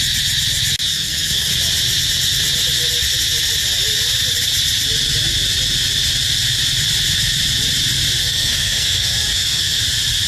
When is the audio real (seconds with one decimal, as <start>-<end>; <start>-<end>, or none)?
0.0-0.9; 1.5-8.2; 9.8-10.3